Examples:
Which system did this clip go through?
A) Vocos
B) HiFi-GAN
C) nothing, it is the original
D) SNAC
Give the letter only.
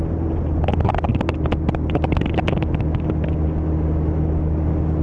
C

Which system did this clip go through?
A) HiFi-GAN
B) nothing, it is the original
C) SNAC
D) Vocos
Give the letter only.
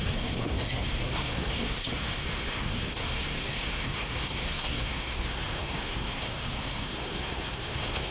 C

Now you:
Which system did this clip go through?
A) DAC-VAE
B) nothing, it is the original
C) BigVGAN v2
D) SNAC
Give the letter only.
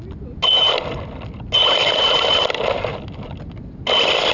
B